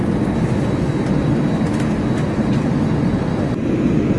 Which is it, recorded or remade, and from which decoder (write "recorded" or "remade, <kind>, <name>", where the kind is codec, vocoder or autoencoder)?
recorded